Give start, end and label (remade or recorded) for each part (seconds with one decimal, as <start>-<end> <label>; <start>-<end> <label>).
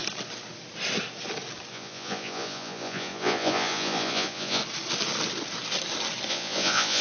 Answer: 0.0-1.7 recorded; 1.7-4.6 remade; 4.6-6.3 recorded; 6.3-7.0 remade